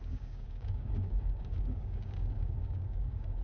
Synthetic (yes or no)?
yes